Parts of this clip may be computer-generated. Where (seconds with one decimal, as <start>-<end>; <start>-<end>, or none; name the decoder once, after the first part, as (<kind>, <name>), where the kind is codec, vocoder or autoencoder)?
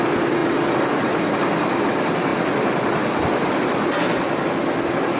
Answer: none